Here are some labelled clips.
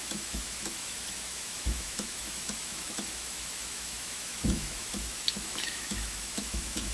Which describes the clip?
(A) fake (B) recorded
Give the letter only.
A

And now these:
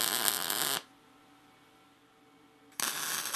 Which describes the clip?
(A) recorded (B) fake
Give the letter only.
A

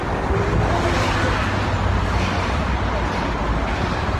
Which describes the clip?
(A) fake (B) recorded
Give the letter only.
B